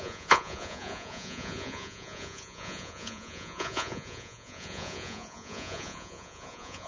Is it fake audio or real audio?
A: fake